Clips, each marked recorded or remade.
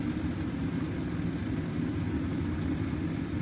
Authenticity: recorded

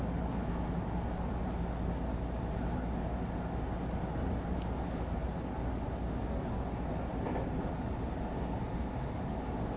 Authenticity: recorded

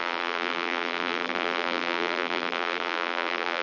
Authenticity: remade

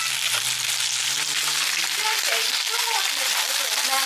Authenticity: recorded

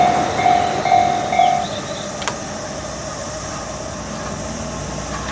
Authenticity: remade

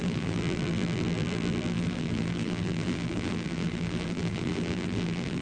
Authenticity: remade